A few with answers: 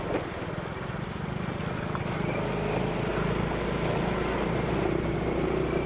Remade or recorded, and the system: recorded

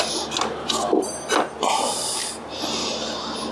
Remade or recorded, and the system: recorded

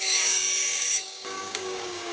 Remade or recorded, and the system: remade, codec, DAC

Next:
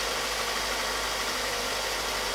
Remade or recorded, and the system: recorded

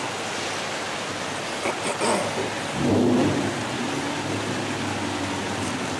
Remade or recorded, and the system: recorded